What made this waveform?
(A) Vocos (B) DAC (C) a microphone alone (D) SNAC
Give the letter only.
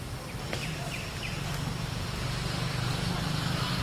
C